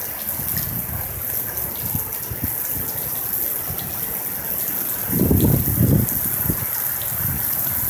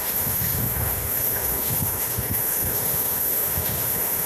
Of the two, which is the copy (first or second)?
second